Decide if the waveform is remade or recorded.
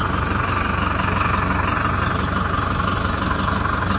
recorded